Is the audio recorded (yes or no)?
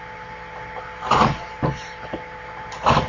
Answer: yes